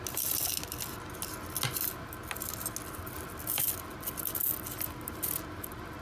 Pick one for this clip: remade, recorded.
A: recorded